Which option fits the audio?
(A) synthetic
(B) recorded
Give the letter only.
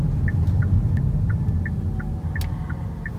B